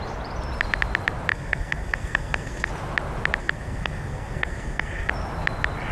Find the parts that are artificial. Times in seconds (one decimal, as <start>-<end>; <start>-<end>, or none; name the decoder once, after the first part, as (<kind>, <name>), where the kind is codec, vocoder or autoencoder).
1.3-2.7 (codec, SNAC); 3.4-5.1